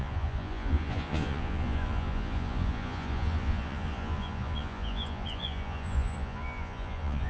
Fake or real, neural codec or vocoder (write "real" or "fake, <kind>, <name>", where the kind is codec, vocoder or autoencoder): fake, vocoder, Vocos